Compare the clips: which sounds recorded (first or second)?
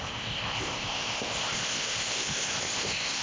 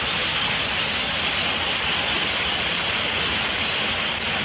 second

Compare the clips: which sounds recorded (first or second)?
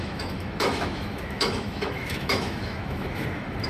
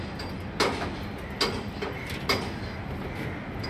second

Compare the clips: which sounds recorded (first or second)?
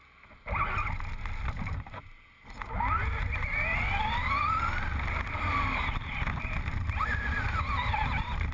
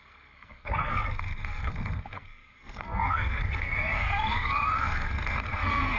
first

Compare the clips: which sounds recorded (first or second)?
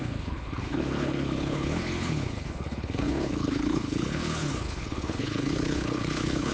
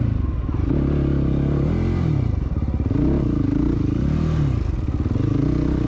second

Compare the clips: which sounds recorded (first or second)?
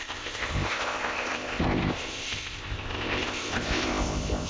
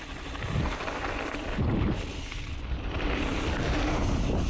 second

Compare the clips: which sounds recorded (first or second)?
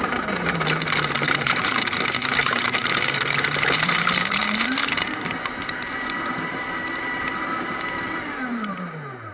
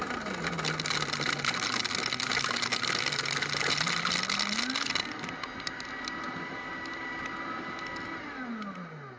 second